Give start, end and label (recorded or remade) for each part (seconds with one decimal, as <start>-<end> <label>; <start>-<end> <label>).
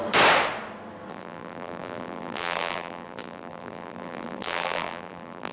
0.0-1.1 recorded; 1.1-5.5 remade